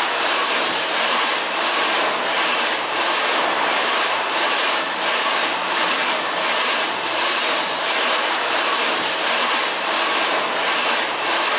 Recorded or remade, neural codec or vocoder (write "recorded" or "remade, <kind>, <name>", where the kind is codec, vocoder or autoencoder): remade, vocoder, BigVGAN v2